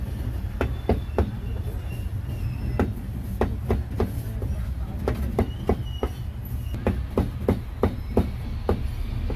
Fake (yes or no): no